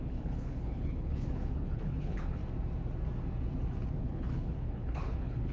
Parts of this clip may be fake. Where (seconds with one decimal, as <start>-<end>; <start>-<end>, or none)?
0.0-2.4; 4.0-5.5